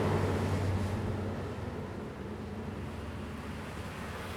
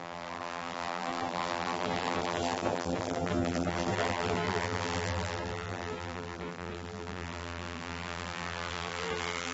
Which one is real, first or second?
first